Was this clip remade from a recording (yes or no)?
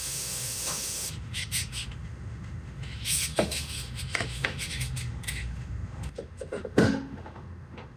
yes